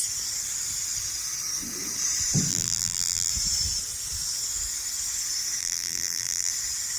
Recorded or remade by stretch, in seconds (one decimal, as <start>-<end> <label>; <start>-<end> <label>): 0.0-2.5 recorded; 2.5-3.3 remade; 3.3-5.6 recorded; 5.6-6.5 remade; 6.5-7.0 recorded